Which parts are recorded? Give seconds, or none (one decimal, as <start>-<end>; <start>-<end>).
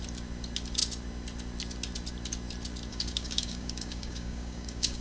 0.0-2.9